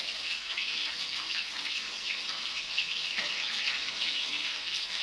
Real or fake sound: fake